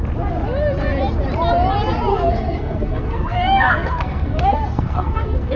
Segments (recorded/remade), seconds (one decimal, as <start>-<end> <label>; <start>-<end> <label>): 0.0-2.1 recorded; 2.1-5.6 remade